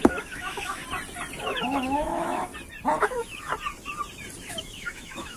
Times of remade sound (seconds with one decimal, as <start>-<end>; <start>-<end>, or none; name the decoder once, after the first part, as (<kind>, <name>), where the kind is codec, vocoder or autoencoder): 0.0-0.8 (autoencoder, DAC-VAE); 1.4-2.5; 3.0-3.5; 4.4-5.4